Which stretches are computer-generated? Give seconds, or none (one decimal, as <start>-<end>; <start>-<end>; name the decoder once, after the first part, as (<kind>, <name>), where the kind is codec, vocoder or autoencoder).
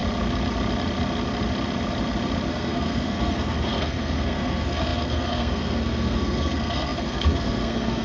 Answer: 2.5-8.0 (codec, SNAC)